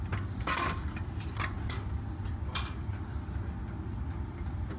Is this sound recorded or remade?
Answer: recorded